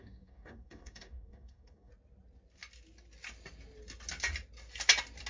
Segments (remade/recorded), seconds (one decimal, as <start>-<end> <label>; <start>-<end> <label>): 0.0-1.9 remade; 1.9-5.3 recorded